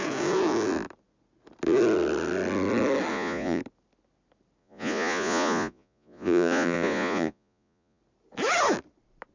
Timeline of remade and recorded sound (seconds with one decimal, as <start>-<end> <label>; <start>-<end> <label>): 0.0-3.1 recorded; 3.1-3.6 remade; 3.6-4.6 recorded; 4.6-8.0 remade; 8.0-9.3 recorded